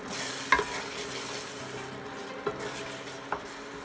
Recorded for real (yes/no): yes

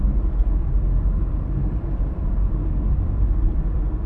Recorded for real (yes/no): no